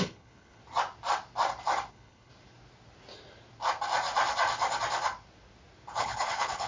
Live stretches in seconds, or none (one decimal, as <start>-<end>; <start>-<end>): 0.6-1.9; 2.3-6.0